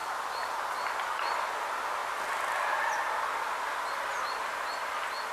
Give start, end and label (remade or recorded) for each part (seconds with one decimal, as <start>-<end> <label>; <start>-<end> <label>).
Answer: 0.0-5.3 recorded